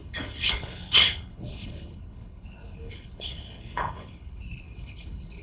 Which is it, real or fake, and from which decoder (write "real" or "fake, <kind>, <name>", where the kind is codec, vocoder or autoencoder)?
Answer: fake, codec, HILCodec